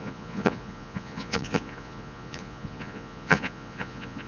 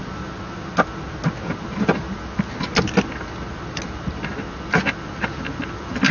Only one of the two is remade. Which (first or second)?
first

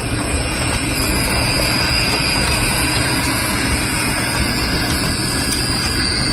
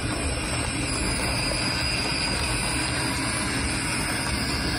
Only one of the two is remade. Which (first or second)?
first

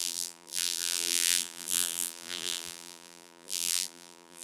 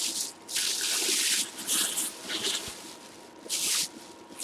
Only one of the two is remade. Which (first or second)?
first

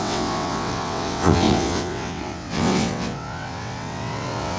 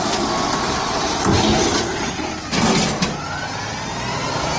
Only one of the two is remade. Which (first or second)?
first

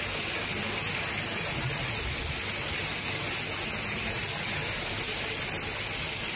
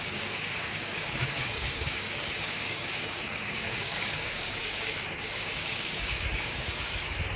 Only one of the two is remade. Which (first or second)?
second